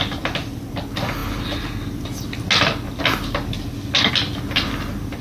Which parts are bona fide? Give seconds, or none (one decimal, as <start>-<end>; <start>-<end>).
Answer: 0.0-5.2

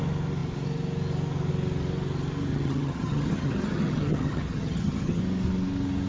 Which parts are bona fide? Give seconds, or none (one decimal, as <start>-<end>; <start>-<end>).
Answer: 0.0-2.5; 5.2-6.1

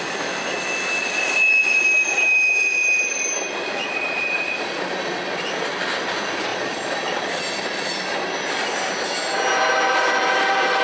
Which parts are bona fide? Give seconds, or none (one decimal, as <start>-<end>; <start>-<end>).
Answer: 0.0-3.8; 4.8-6.5; 7.3-10.8